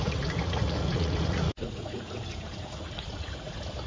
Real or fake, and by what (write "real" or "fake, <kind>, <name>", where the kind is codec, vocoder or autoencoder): fake, vocoder, Vocos